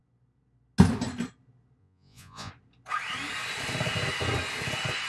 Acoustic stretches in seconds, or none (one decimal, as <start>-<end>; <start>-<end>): 0.0-1.8; 2.5-5.1